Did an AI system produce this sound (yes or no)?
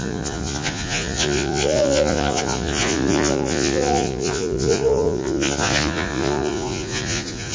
yes